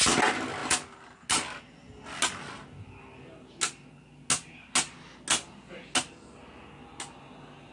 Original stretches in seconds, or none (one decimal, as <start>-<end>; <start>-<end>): 0.0-7.7